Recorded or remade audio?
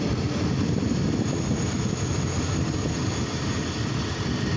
recorded